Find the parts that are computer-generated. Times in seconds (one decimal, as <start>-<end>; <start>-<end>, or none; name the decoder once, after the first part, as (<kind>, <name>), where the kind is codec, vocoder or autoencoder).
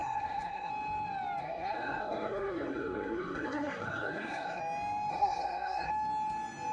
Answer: 0.0-0.7 (codec, SNAC); 1.4-4.6; 5.1-5.9